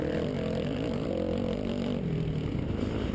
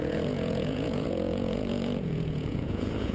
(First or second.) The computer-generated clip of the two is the second